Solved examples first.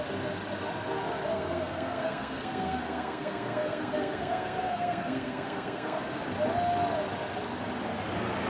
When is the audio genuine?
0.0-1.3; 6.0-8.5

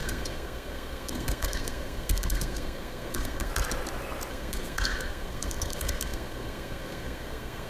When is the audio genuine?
3.5-4.3

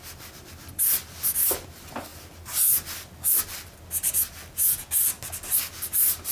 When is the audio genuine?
0.0-6.3

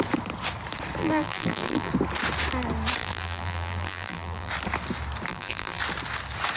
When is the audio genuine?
0.0-1.0; 1.9-3.0; 4.5-5.3; 5.8-6.6